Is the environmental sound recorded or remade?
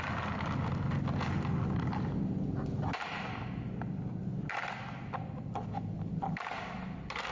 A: recorded